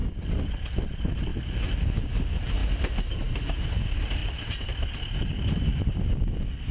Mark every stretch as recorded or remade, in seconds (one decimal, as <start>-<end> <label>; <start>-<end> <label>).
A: 0.0-2.6 recorded; 2.6-3.3 remade; 3.3-4.2 recorded; 4.2-6.7 remade